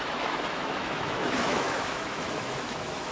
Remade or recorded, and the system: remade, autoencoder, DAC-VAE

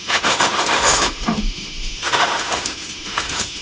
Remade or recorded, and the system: remade, autoencoder, DAC-VAE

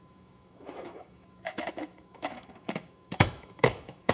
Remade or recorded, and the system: remade, autoencoder, DAC-VAE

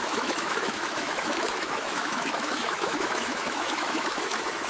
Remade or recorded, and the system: remade, autoencoder, DAC-VAE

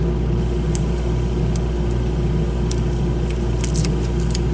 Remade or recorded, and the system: recorded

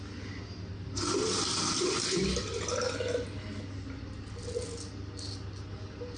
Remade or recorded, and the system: recorded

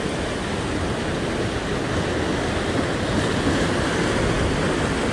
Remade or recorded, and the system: recorded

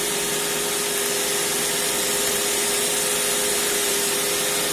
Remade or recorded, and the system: recorded